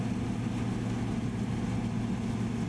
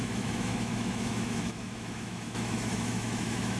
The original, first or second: first